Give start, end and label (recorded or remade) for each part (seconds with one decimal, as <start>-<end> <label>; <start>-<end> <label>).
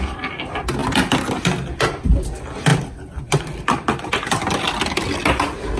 0.0-5.8 recorded